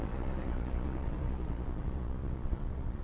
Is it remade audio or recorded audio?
remade